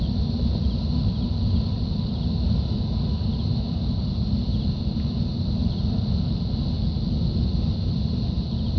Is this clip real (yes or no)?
yes